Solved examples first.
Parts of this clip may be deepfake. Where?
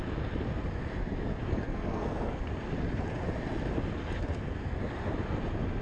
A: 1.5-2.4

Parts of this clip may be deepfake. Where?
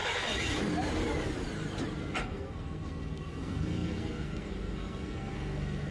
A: 2.2-5.9